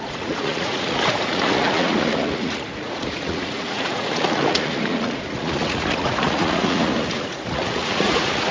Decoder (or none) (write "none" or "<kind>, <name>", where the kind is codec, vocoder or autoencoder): vocoder, Vocos